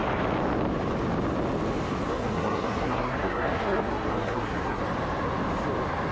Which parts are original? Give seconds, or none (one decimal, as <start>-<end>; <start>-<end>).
0.0-2.1; 4.8-6.1